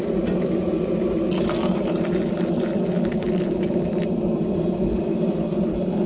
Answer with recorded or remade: recorded